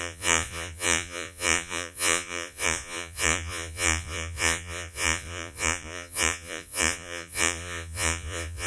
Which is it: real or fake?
fake